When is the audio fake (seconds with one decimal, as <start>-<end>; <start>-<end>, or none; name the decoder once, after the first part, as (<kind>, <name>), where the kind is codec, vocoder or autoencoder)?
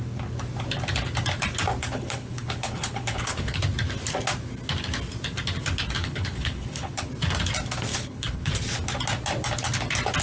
1.8-3.6 (codec, HILCodec); 6.0-7.1; 7.9-8.5